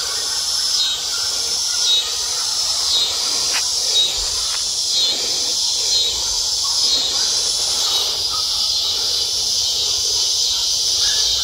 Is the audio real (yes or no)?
yes